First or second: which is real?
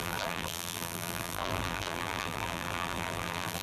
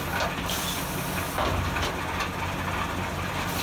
second